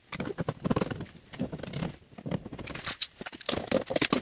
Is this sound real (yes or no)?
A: yes